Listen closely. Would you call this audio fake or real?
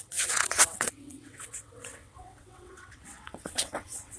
fake